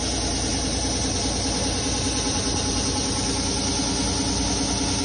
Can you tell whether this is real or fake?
real